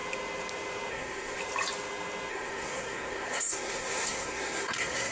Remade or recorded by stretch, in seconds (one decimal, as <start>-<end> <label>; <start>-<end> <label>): 0.0-0.9 recorded; 0.9-1.4 remade; 1.4-2.3 recorded; 2.3-5.1 remade